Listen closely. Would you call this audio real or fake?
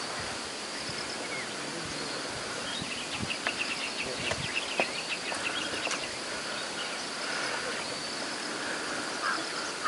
real